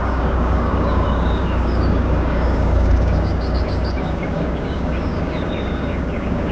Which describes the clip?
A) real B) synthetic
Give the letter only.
B